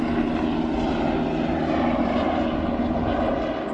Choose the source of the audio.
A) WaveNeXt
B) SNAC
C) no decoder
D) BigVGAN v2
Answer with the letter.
C